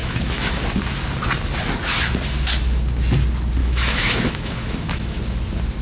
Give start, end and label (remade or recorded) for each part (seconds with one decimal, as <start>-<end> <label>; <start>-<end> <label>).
0.0-0.6 remade; 0.6-3.6 recorded; 3.6-5.2 remade; 5.2-5.8 recorded